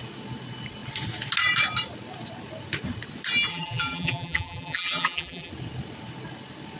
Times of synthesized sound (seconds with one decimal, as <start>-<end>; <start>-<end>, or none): 3.5-5.5